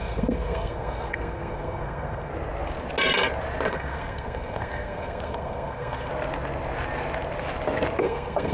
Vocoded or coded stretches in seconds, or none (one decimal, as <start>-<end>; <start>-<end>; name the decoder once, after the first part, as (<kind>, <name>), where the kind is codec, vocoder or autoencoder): 0.0-2.3 (codec, SNAC); 3.7-6.1; 8.0-8.5